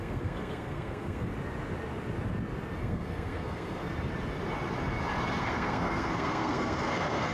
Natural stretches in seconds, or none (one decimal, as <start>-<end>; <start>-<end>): 1.3-2.8; 3.8-5.4